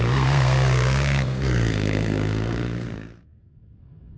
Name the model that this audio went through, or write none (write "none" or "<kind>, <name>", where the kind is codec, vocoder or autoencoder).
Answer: codec, SNAC